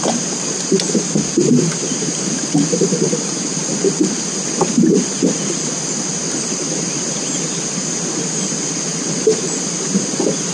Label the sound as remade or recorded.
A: recorded